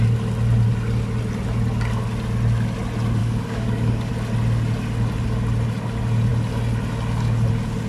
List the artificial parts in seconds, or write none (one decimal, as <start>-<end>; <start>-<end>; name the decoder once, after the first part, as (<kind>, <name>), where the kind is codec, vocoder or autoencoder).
3.2-4.1 (codec, DAC)